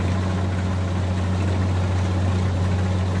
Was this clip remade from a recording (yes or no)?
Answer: no